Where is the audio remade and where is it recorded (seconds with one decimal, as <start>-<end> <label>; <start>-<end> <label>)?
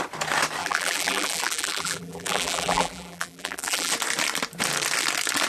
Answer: 0.0-0.6 recorded; 0.6-3.9 remade; 3.9-5.5 recorded